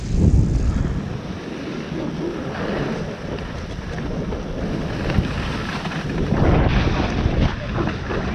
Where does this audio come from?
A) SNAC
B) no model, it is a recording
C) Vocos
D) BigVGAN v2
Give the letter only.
B